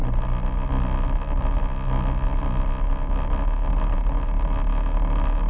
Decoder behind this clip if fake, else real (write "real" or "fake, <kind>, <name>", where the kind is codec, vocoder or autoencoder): real